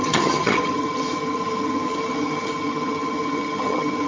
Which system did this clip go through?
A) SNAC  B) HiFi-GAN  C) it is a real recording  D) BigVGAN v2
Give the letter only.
B